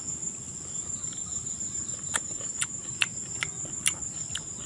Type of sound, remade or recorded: recorded